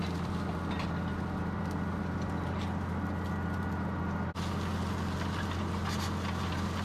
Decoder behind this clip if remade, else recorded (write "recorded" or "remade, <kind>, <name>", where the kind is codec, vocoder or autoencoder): recorded